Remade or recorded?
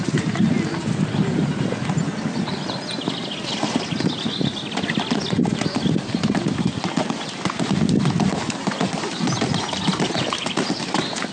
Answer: recorded